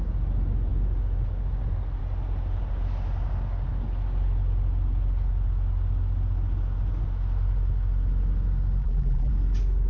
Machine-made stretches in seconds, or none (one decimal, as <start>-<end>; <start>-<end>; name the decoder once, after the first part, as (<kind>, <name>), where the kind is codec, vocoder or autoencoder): 8.8-9.3 (vocoder, BigVGAN v2)